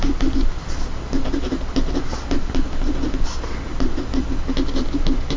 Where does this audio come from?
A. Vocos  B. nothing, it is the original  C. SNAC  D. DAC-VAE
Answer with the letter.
B